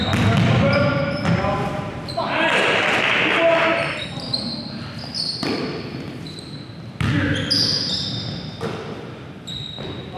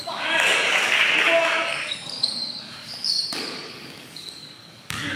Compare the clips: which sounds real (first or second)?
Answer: first